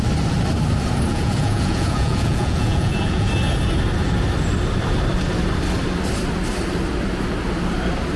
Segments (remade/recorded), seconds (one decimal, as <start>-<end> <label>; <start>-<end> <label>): 0.0-1.1 recorded; 1.1-3.3 remade; 3.3-8.2 recorded